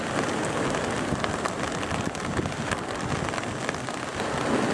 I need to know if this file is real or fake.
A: real